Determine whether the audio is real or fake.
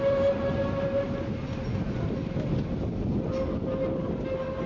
real